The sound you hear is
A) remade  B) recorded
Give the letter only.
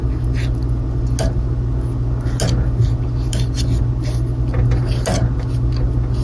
B